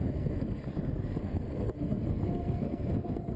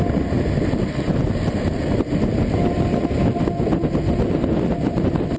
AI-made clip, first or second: first